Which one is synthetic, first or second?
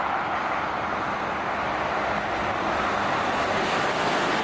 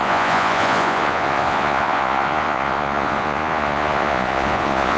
second